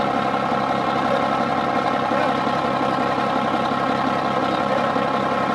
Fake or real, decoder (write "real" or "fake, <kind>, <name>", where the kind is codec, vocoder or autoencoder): real